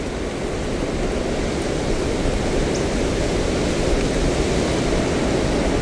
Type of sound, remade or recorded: recorded